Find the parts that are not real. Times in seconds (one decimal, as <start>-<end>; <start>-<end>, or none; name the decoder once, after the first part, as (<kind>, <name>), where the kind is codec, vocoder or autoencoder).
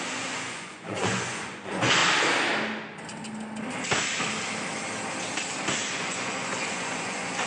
0.0-2.0 (vocoder, Vocos); 5.9-7.5